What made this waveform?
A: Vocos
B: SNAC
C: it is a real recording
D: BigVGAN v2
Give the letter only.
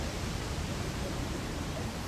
D